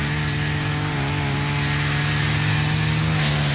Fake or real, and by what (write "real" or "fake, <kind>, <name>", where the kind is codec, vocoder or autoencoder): real